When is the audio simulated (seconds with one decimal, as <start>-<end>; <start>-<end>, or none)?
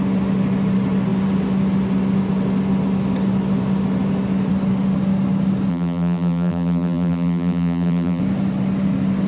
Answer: 5.7-8.2